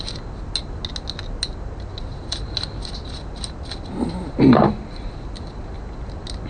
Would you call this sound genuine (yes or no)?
yes